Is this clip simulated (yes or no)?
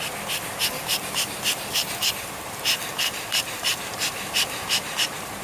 yes